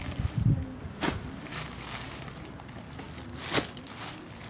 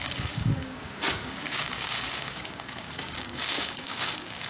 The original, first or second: first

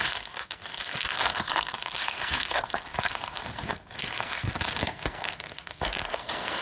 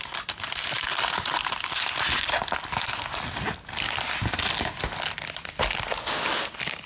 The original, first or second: second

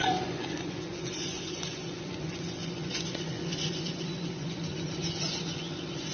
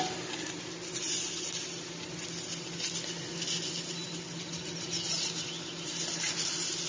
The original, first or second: second